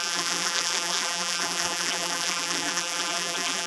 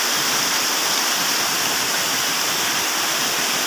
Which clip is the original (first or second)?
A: second